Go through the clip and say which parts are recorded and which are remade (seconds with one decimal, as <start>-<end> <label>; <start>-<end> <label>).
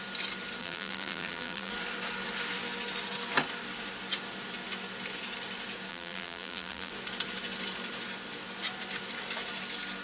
0.0-0.6 recorded; 0.6-1.7 remade; 1.7-5.9 recorded; 5.9-6.9 remade; 6.9-10.0 recorded